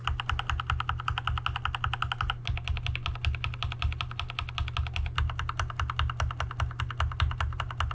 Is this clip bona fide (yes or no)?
yes